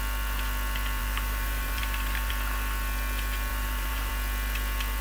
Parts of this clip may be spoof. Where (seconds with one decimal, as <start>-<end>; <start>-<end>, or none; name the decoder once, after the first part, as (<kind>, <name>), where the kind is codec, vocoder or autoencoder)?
1.0-2.3 (vocoder, BigVGAN v2); 3.5-4.1